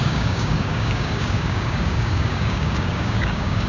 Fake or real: fake